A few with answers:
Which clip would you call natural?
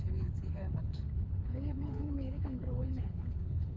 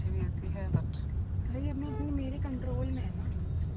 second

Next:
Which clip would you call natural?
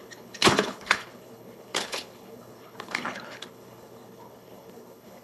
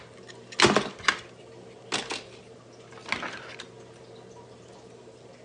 second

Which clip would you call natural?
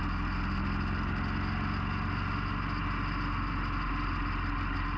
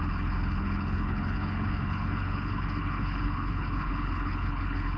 first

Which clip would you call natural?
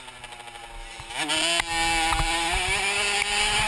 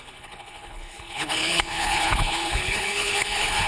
first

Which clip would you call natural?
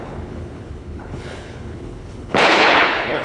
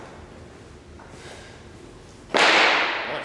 second